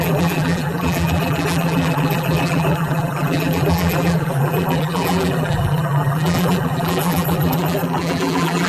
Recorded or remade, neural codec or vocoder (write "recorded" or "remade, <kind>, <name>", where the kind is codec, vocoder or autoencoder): remade, vocoder, BigVGAN v2